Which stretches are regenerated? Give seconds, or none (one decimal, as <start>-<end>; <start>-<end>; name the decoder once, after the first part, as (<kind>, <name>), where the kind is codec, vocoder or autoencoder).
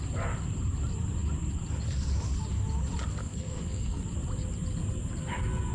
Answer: 3.2-4.0 (codec, SNAC)